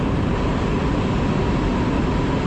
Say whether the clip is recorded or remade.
recorded